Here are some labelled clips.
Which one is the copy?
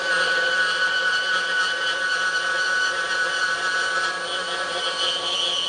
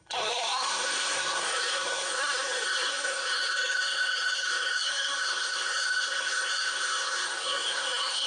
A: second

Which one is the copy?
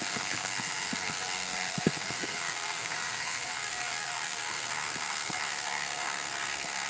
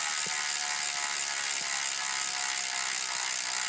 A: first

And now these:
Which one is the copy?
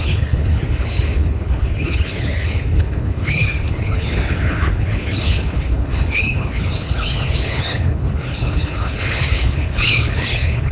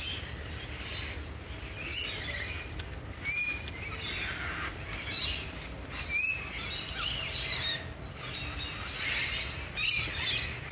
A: first